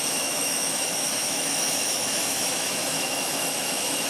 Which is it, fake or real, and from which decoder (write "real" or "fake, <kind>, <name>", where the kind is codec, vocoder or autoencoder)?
fake, autoencoder, DAC-VAE